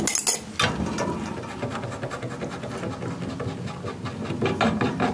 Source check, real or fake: real